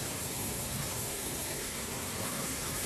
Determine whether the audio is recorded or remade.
remade